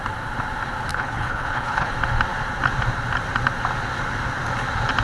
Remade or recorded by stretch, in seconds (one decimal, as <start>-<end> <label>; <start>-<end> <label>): 0.0-0.9 recorded; 0.9-1.9 remade; 1.9-5.0 recorded